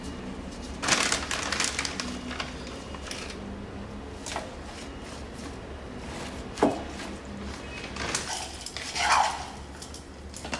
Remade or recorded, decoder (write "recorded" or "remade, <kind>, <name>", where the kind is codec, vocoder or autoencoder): recorded